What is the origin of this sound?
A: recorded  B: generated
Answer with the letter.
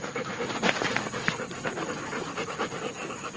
A